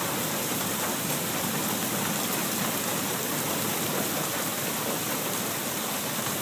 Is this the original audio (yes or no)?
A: yes